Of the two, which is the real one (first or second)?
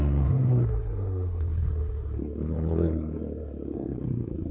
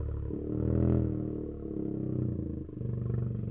second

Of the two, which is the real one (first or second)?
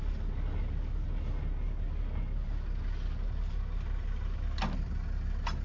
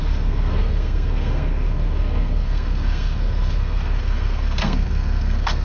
first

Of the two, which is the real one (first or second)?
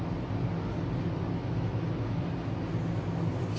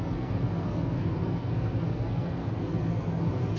first